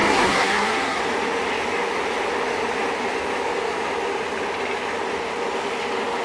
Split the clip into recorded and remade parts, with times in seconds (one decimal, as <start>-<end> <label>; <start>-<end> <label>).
0.0-1.0 remade; 1.0-6.2 recorded